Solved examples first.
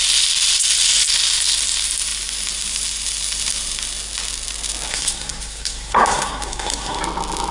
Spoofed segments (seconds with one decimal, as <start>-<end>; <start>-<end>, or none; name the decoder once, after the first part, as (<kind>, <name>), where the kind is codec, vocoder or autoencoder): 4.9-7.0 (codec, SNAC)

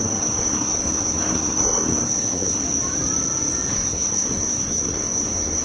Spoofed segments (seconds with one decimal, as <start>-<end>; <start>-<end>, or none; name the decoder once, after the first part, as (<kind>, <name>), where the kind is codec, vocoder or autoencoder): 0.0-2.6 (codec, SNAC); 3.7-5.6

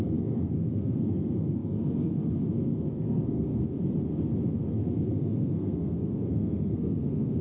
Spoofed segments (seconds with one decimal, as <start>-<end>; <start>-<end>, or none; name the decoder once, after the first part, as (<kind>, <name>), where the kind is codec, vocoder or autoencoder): 0.0-3.6 (codec, SNAC); 4.5-7.4

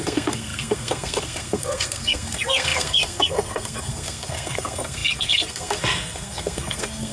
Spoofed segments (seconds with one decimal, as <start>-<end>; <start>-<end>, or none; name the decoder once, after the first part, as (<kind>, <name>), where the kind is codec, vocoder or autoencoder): 0.0-7.1 (codec, SNAC)

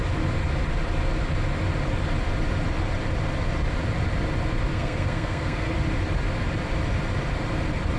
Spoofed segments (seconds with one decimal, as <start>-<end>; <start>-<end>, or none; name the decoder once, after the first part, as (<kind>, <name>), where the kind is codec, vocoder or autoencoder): 4.7-5.7 (codec, SNAC)

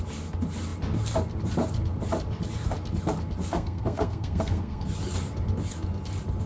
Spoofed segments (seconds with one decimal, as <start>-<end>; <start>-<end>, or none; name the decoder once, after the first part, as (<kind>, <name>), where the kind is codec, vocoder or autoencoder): 3.5-4.9 (codec, SNAC)

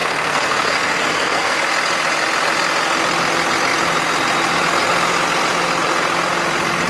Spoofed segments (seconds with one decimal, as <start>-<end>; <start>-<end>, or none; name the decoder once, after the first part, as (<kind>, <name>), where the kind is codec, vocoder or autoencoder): 0.0-1.6 (codec, SNAC)